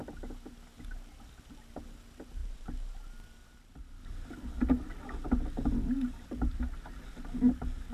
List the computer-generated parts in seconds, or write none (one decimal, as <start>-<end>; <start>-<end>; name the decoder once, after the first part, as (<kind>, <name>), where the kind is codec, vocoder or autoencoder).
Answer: none